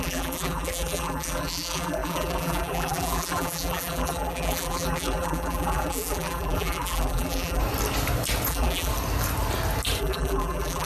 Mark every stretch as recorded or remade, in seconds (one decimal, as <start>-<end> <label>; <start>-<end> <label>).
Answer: 0.0-7.6 remade; 7.6-8.5 recorded; 8.5-8.9 remade; 8.9-10.0 recorded; 10.0-10.9 remade